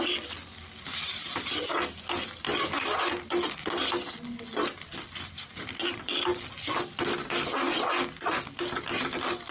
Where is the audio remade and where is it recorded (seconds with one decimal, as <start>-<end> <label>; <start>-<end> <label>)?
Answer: 0.0-4.6 recorded; 4.6-5.5 remade; 5.5-6.3 recorded; 6.3-7.7 remade; 7.7-9.5 recorded